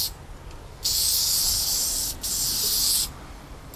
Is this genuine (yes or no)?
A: yes